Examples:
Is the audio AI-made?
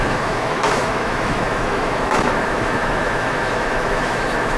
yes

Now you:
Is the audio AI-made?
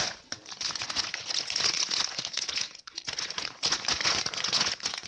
yes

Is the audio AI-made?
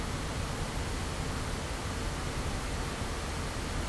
no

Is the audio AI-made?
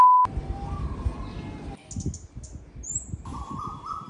no